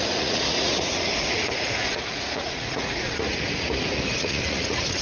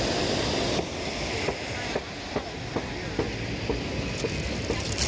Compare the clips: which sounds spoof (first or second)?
first